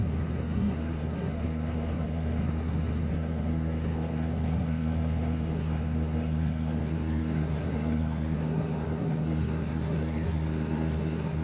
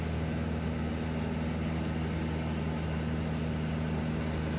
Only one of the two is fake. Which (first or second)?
first